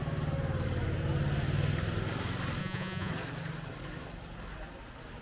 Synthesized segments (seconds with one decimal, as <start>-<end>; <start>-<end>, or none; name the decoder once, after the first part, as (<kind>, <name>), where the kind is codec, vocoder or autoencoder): 2.6-3.1 (vocoder, Vocos)